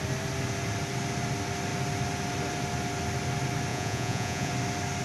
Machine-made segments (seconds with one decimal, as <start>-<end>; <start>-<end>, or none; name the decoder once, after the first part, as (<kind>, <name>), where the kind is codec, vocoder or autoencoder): 3.7-4.5 (vocoder, Vocos)